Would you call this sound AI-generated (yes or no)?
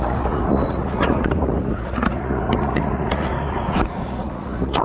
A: yes